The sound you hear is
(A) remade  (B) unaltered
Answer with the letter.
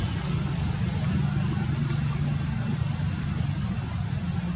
B